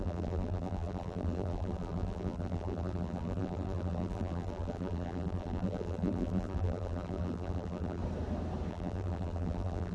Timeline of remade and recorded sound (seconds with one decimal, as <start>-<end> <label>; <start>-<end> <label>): 0.0-8.0 remade; 8.0-8.7 recorded; 8.7-9.9 remade